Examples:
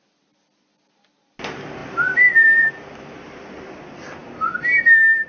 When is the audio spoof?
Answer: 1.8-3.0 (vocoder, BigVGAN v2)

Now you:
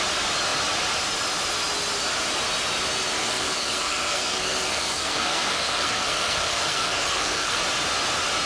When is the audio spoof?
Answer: 3.2-7.6 (codec, SNAC)

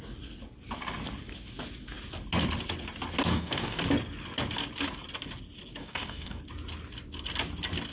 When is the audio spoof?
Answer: 3.3-3.8 (codec, DAC); 5.8-6.4

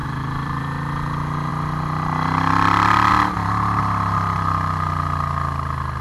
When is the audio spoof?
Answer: 0.0-0.6 (vocoder, BigVGAN v2)

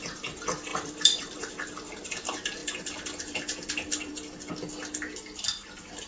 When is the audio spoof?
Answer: 0.7-1.5 (vocoder, BigVGAN v2); 2.6-4.5

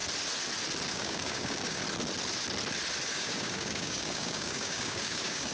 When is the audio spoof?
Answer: 0.9-1.8 (codec, DAC); 3.1-5.5

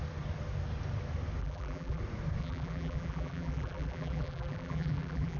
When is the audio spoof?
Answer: 1.4-2.0 (vocoder, BigVGAN v2); 2.4-5.4